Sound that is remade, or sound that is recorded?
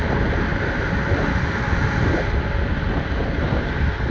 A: recorded